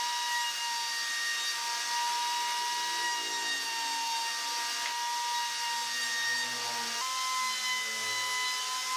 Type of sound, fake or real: real